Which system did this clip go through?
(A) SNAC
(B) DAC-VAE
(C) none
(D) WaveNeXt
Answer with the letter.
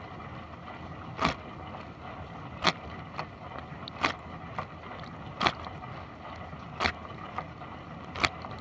C